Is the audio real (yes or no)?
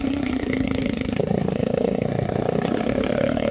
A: no